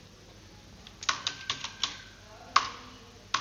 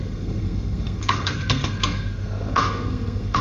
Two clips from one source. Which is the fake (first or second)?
second